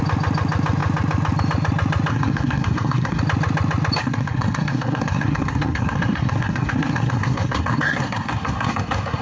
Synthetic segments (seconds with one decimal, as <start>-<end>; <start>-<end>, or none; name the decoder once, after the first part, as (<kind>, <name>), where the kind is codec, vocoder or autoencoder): 2.1-3.2 (codec, SNAC); 4.0-9.2